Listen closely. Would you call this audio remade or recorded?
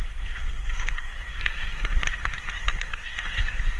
remade